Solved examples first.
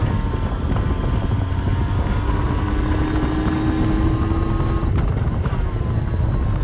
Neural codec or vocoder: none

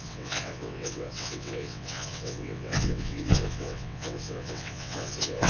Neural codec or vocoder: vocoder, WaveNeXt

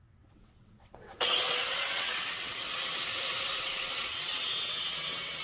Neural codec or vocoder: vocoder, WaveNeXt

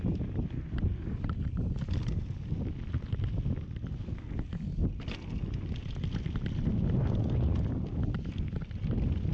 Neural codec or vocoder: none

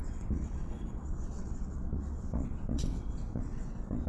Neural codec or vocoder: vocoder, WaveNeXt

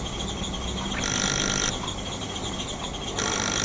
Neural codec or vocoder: none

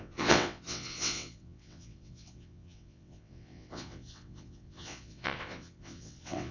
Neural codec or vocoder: vocoder, WaveNeXt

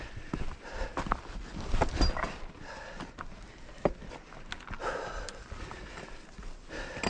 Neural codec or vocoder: none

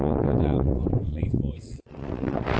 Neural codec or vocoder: vocoder, WaveNeXt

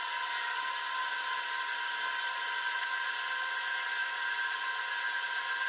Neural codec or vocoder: none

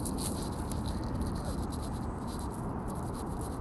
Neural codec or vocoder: none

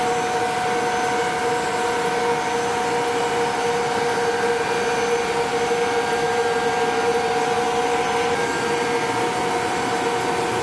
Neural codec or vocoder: none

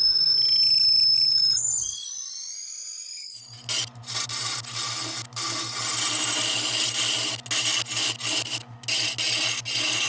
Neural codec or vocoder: none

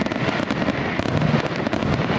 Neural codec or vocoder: none